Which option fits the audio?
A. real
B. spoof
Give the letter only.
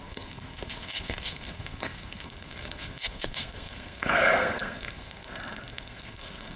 B